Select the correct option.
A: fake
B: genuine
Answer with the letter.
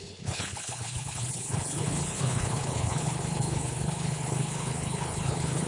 A